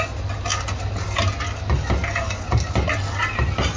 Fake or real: real